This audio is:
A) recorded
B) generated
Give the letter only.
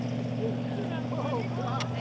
A